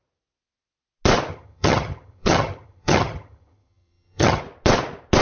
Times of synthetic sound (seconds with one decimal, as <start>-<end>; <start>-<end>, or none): 1.3-4.4